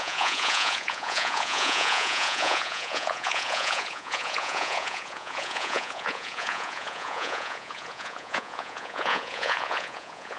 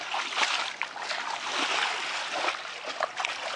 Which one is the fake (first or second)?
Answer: first